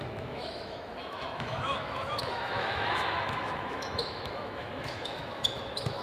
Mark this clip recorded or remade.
remade